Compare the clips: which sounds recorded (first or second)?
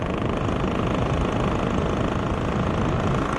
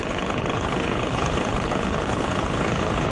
first